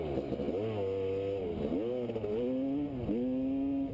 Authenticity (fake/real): real